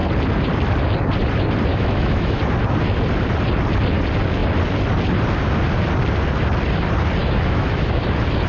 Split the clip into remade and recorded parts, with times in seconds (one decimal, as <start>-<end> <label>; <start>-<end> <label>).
0.0-1.7 recorded; 1.7-2.4 remade; 2.4-7.2 recorded; 7.2-8.0 remade; 8.0-8.5 recorded

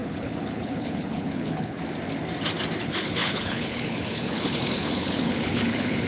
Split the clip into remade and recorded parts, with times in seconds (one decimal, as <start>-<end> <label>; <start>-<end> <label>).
0.0-1.8 remade; 1.8-2.8 recorded; 2.8-6.1 remade

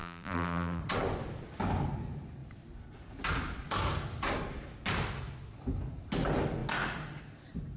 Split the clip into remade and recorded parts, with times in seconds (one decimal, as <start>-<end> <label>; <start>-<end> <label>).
0.0-0.8 remade; 0.8-7.8 recorded

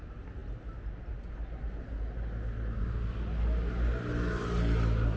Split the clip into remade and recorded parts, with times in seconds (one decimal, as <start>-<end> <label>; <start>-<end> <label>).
0.0-5.2 recorded

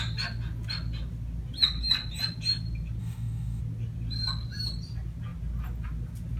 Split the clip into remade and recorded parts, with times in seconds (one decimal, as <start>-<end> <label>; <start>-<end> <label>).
0.0-3.0 recorded; 3.0-3.6 remade; 3.6-6.4 recorded